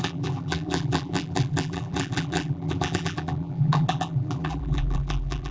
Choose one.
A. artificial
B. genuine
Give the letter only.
A